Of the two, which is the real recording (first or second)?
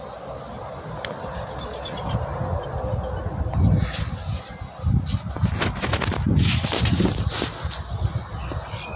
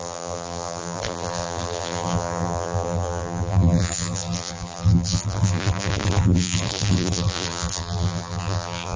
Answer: first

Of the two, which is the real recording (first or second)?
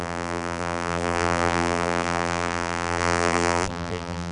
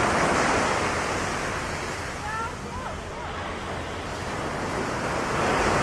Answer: second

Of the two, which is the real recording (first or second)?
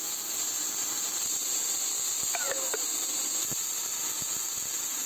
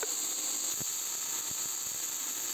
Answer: second